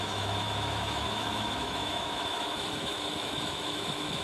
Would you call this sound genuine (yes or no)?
no